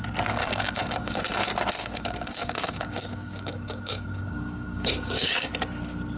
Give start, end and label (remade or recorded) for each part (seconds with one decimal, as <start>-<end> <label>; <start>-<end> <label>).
0.0-0.4 recorded; 0.4-1.2 remade; 1.2-1.8 recorded; 1.8-5.5 remade; 5.5-6.2 recorded